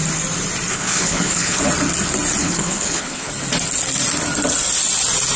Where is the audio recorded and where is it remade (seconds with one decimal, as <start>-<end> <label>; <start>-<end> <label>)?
0.0-0.7 recorded; 0.7-1.6 remade; 1.6-2.4 recorded; 2.4-3.3 remade; 3.3-5.4 recorded